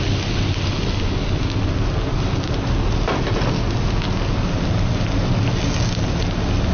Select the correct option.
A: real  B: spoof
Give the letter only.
A